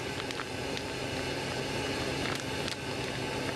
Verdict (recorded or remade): recorded